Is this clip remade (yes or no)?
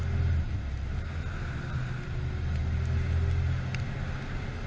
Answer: no